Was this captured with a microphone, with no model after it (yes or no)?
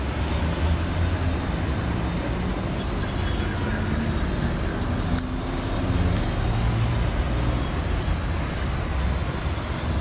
yes